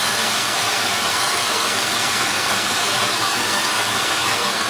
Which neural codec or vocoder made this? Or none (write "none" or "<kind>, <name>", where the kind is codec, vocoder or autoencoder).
codec, SNAC